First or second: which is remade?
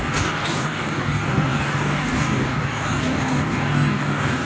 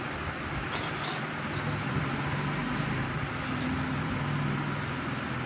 first